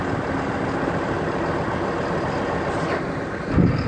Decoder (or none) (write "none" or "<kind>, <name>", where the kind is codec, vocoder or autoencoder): none